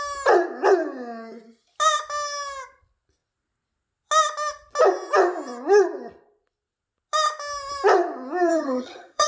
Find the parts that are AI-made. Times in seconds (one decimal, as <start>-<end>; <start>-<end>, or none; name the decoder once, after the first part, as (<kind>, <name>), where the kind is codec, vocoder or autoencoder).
8.5-9.3 (vocoder, HiFi-GAN)

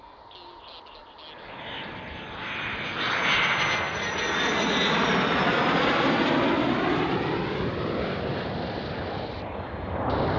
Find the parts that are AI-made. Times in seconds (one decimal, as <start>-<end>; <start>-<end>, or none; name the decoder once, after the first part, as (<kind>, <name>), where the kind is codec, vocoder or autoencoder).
none

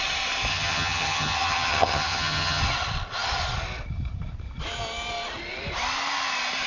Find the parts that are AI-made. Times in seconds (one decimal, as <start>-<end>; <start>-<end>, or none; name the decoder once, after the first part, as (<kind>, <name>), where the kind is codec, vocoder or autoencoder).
0.5-2.6 (vocoder, HiFi-GAN)

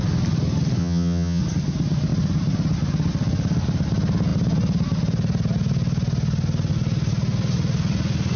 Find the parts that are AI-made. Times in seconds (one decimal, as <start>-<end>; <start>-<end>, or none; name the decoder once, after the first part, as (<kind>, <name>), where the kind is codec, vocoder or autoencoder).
0.8-1.4 (vocoder, HiFi-GAN)

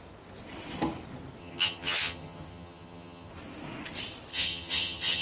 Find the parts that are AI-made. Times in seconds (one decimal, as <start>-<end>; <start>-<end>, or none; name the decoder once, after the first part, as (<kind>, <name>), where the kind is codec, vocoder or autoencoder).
1.4-3.3 (vocoder, HiFi-GAN); 4.3-5.2

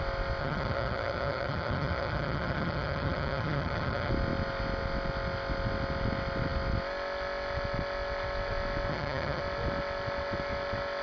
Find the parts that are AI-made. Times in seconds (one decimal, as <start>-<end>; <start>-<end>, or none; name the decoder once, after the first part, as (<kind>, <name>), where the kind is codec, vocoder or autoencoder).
0.4-4.1 (vocoder, HiFi-GAN); 8.9-9.4